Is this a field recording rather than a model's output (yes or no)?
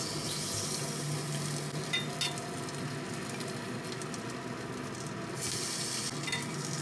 yes